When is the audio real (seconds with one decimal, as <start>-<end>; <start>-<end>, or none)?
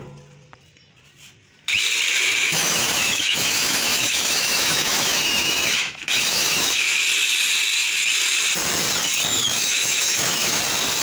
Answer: 0.0-2.4; 7.0-9.3; 10.6-11.0